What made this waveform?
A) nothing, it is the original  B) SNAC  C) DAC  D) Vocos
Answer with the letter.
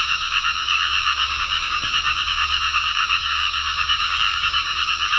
C